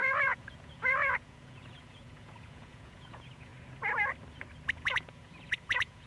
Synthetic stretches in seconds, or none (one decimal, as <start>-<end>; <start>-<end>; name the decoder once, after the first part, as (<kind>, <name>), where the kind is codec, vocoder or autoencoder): 0.0-3.5 (vocoder, Vocos); 4.7-6.1